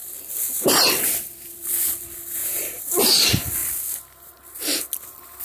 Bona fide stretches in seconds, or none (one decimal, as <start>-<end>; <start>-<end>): 0.0-2.4; 2.9-5.4